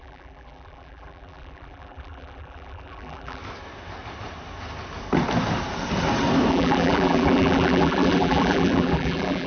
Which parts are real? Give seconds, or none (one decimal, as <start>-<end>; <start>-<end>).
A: 3.4-6.5